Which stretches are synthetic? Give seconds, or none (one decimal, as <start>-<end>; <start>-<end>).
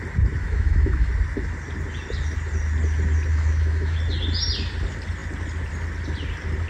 0.4-1.1; 3.3-4.0